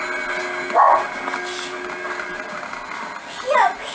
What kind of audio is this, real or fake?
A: real